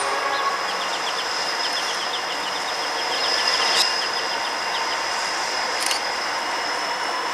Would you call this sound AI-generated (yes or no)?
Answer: no